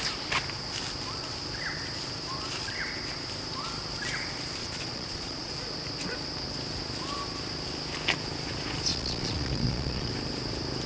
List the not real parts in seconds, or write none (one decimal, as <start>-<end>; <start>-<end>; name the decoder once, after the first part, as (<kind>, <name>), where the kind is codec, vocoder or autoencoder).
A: 4.6-5.5 (vocoder, Vocos); 8.9-10.1